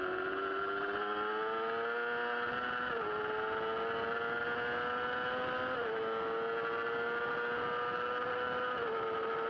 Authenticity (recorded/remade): recorded